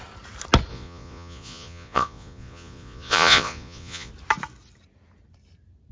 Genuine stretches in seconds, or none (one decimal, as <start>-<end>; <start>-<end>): 0.0-0.7; 4.1-5.9